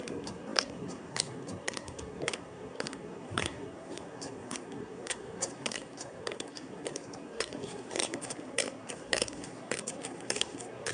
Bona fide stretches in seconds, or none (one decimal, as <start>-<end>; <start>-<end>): none